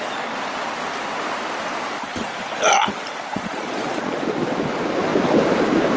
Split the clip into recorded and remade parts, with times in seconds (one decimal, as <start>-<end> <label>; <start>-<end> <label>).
0.0-3.3 recorded; 3.3-4.2 remade; 4.2-6.0 recorded